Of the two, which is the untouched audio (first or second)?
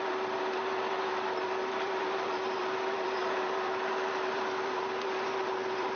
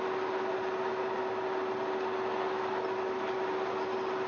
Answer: second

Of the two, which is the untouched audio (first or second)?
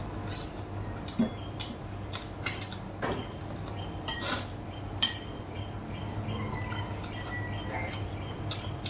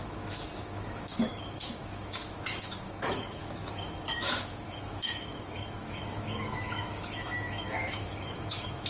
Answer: first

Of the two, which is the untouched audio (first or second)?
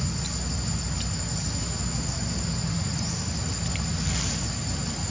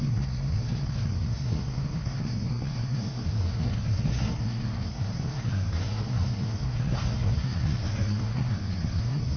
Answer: first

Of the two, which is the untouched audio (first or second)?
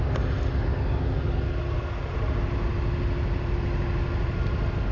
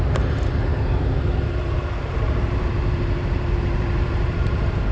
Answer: first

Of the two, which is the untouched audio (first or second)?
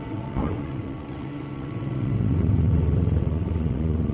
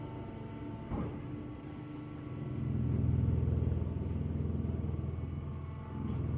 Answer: second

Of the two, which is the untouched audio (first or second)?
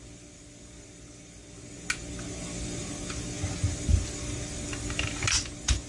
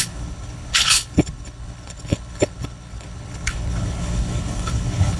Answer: first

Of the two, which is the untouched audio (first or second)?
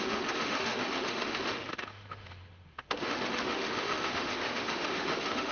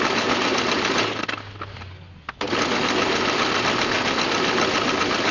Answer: second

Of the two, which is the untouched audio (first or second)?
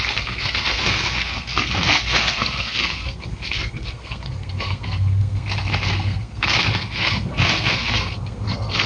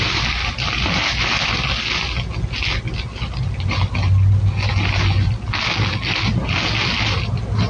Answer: second